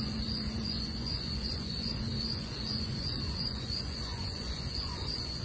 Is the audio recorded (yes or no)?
no